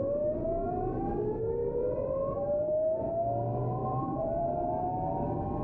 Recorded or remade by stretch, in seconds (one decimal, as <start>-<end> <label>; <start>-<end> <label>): 0.0-1.6 recorded; 1.6-2.3 remade; 2.3-3.8 recorded; 3.8-4.5 remade; 4.5-5.6 recorded